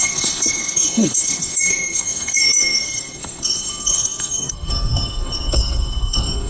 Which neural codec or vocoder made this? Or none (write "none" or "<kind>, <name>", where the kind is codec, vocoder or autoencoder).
codec, SNAC